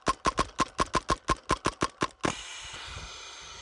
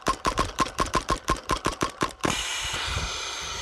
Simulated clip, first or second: second